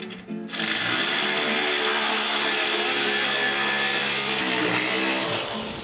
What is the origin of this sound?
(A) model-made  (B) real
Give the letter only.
B